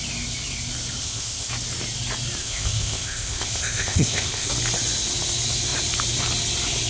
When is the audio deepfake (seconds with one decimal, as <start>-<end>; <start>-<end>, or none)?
1.0-1.5; 2.4-4.5